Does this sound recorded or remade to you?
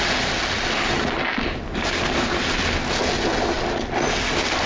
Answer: recorded